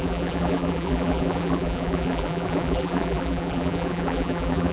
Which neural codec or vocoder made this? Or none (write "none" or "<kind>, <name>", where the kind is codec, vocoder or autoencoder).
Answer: vocoder, BigVGAN v2